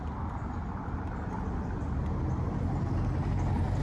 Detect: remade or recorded recorded